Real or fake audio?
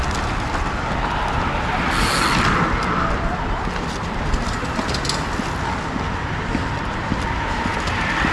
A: real